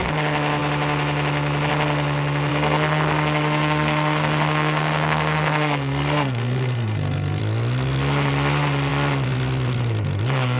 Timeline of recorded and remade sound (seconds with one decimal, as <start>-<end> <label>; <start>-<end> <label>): 0.0-2.5 recorded; 2.5-7.4 remade; 7.4-10.6 recorded